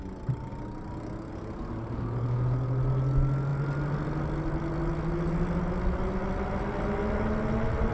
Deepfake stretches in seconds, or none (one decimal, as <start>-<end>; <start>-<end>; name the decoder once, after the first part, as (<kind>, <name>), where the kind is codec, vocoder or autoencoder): none